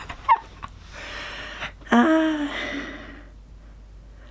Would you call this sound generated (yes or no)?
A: no